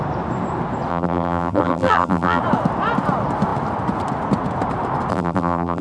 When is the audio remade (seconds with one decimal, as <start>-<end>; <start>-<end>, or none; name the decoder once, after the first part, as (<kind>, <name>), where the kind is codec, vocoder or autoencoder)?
0.9-2.4 (vocoder, BigVGAN v2); 5.1-5.8